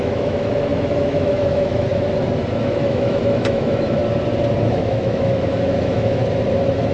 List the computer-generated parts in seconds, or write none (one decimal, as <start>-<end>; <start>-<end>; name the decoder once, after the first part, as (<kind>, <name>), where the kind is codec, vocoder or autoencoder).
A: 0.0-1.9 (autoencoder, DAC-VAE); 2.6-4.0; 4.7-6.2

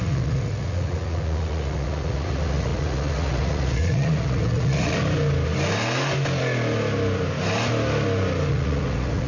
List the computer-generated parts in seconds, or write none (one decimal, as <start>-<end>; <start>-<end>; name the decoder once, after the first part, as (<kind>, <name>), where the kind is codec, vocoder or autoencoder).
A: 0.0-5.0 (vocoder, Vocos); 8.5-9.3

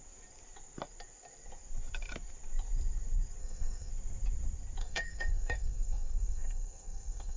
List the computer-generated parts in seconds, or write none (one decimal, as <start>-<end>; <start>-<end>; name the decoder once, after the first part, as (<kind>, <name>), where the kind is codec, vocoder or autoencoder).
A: 3.4-3.9 (codec, SNAC); 4.8-7.4

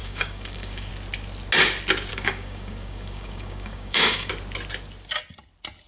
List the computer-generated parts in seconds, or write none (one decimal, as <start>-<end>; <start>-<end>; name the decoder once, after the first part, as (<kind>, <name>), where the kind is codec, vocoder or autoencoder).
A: 0.0-0.9 (codec, DAC); 2.1-4.3

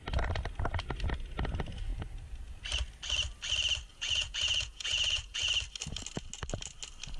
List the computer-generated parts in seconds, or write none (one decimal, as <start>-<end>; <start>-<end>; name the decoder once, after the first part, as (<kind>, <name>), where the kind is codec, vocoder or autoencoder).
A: 3.9-5.5 (vocoder, Vocos)